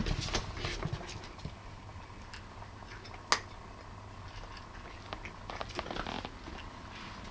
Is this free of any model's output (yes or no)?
yes